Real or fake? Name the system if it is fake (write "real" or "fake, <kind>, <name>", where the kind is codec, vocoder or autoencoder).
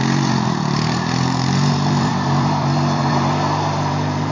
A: fake, vocoder, BigVGAN v2